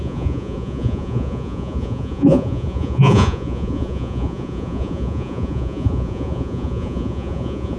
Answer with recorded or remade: remade